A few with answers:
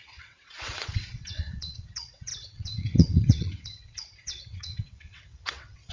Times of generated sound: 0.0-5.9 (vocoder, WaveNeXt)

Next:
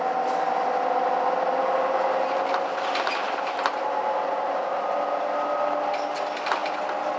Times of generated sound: 3.2-4.9 (vocoder, BigVGAN v2)

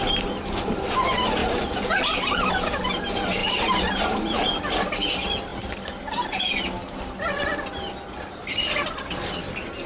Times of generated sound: 1.4-2.5 (vocoder, BigVGAN v2); 3.4-4.4